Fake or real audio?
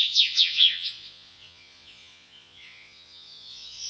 fake